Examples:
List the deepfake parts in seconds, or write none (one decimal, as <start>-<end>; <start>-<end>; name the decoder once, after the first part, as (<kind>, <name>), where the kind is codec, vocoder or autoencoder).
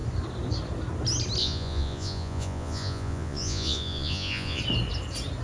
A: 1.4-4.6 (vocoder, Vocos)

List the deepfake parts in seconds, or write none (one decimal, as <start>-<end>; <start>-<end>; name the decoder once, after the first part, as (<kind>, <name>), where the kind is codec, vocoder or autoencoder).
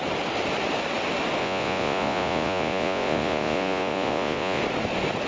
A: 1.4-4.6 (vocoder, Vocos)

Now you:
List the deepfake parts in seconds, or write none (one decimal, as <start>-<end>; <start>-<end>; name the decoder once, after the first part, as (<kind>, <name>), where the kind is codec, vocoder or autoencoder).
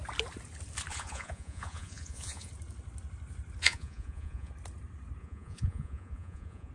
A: 0.9-2.5 (vocoder, Vocos); 3.6-4.5; 5.2-6.7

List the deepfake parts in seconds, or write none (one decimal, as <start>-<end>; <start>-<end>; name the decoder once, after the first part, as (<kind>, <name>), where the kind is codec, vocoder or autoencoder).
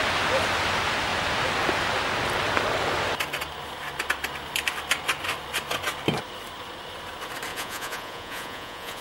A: 7.5-9.0 (vocoder, Vocos)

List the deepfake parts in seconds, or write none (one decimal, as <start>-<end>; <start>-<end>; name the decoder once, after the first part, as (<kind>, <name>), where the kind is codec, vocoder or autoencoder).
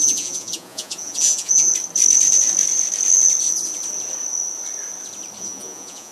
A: 0.0-1.7 (vocoder, Vocos); 5.4-6.1